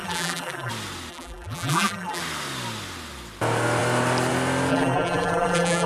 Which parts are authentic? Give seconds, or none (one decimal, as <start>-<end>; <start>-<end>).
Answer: 0.7-1.1; 2.2-4.7